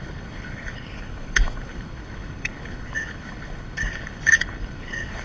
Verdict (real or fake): fake